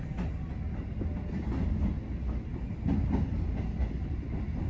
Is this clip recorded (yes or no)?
yes